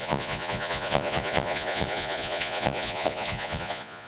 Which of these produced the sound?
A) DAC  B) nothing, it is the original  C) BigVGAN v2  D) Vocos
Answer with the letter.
D